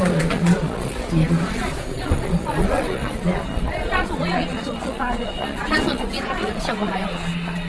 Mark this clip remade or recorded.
remade